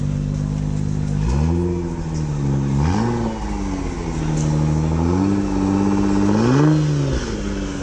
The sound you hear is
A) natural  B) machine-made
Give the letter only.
A